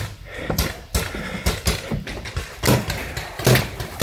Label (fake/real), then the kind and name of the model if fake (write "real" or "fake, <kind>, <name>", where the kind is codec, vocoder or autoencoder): real